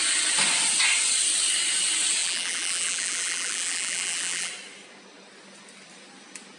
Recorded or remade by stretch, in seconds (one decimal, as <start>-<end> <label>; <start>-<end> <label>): 0.0-2.2 recorded; 2.2-4.5 remade; 4.5-6.6 recorded